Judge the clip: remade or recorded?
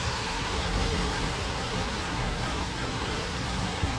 remade